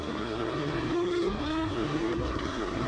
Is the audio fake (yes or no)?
yes